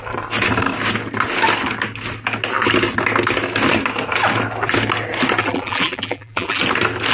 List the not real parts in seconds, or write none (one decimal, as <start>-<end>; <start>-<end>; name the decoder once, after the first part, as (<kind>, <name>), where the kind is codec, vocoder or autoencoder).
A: 5.4-6.6 (vocoder, BigVGAN v2)